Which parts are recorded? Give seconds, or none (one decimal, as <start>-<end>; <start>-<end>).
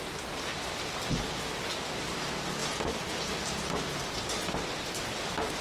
0.0-5.6